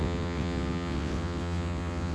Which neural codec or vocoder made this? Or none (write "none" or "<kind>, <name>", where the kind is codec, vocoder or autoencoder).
vocoder, WaveNeXt